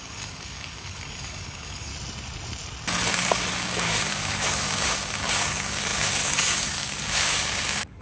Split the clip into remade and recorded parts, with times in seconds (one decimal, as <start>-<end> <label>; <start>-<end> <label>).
0.0-1.9 remade; 1.9-3.1 recorded; 3.1-8.0 remade